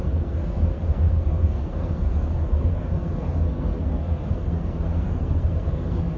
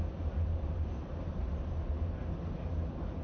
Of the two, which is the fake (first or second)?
first